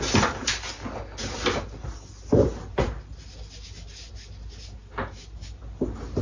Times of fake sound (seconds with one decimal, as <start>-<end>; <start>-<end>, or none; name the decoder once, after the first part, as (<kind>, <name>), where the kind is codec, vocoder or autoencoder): none

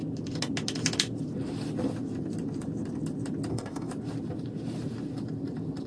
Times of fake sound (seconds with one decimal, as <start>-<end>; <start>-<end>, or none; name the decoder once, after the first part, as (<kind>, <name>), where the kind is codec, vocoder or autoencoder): 3.5-3.9 (codec, DAC)